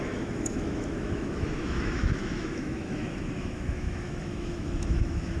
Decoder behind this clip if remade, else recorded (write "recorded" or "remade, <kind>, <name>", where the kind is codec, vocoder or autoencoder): remade, autoencoder, DAC-VAE